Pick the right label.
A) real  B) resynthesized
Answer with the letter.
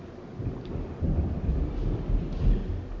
A